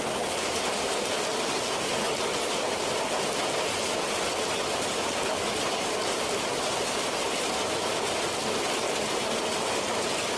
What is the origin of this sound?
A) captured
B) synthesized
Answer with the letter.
A